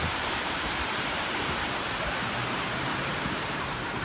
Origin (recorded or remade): remade